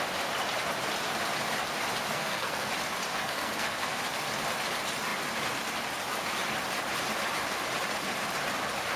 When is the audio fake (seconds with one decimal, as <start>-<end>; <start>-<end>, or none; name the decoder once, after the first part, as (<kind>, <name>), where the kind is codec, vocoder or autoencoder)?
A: 2.1-2.7 (codec, SNAC); 3.1-4.0